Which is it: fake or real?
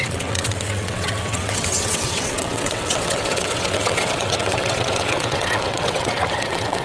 fake